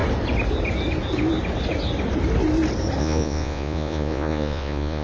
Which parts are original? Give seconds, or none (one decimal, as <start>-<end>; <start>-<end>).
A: 0.0-3.0